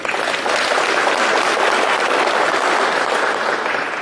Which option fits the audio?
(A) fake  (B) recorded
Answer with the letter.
B